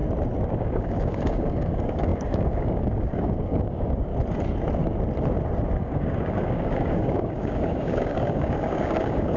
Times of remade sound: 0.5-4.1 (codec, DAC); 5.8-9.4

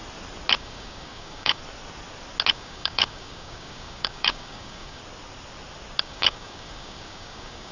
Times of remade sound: 0.6-1.6 (codec, DAC); 2.5-5.0; 6.0-7.7

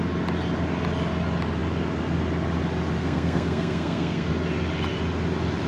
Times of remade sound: 3.0-4.3 (codec, SNAC)

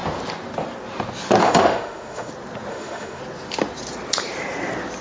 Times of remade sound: 1.4-2.3 (autoencoder, DAC-VAE); 2.7-3.2

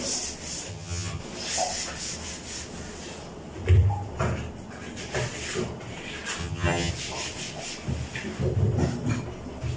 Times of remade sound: 0.7-1.2 (vocoder, HiFi-GAN); 6.4-6.9